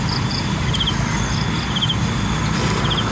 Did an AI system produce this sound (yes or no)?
no